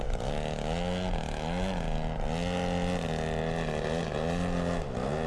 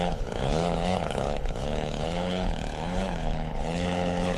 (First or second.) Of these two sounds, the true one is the first